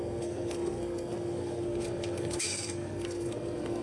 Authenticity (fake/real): fake